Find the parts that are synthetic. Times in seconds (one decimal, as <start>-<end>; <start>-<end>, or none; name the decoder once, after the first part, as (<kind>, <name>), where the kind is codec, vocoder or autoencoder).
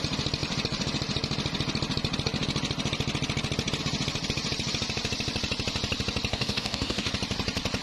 6.3-7.1 (codec, DAC)